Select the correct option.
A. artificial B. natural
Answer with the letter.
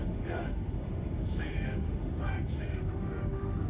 A